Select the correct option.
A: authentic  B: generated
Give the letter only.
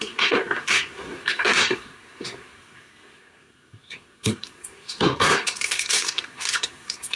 B